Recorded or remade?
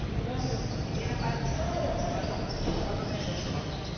recorded